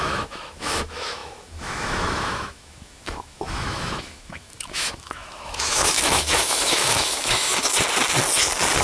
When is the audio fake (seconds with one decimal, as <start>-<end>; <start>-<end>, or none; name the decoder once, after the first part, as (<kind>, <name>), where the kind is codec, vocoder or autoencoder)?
0.0-7.5 (autoencoder, DAC-VAE)